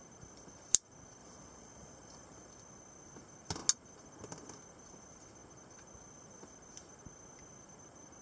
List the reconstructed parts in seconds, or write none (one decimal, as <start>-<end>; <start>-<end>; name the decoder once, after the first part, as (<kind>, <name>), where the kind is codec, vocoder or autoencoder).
1.2-2.5 (vocoder, Vocos)